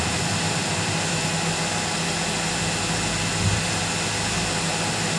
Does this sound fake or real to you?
real